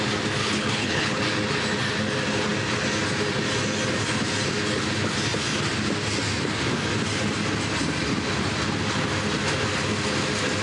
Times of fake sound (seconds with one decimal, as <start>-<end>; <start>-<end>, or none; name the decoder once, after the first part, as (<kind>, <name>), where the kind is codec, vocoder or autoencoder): 0.4-1.2 (codec, HILCodec)